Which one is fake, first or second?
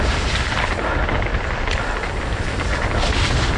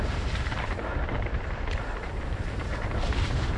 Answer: second